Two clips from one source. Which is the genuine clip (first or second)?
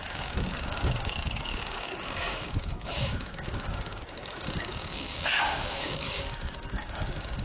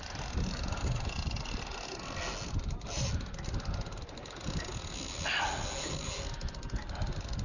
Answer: second